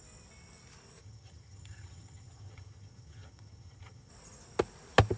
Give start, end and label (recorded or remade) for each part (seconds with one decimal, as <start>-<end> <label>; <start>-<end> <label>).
0.0-1.0 recorded; 1.0-4.1 remade; 4.1-5.2 recorded